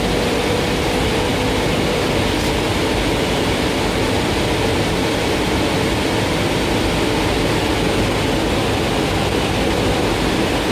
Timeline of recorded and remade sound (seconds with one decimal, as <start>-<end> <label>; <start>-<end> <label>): 0.0-4.7 recorded; 4.7-5.4 remade; 5.4-10.7 recorded

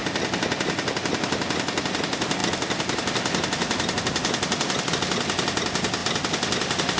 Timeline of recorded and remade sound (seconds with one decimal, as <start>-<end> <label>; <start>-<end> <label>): 0.0-7.0 recorded

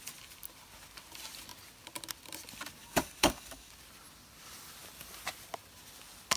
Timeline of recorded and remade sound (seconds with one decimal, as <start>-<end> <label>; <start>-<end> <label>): 0.0-2.8 recorded; 2.8-3.7 remade; 3.7-6.4 recorded

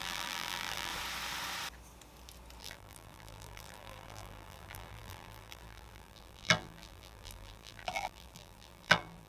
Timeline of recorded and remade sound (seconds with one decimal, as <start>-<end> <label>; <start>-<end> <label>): 0.0-0.9 remade; 0.9-2.6 recorded; 2.6-9.3 remade

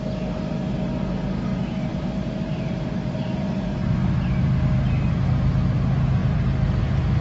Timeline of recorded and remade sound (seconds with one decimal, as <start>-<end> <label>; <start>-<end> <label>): 0.0-1.5 recorded; 1.5-4.1 remade; 4.1-7.2 recorded

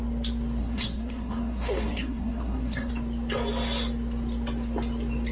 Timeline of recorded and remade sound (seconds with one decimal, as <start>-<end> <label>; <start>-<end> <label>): 0.0-0.6 recorded; 0.6-2.9 remade; 2.9-5.3 recorded

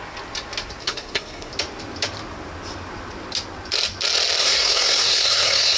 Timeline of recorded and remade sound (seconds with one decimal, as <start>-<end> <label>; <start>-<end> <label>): 0.0-0.8 recorded; 0.8-1.5 remade; 1.5-4.4 recorded; 4.4-5.8 remade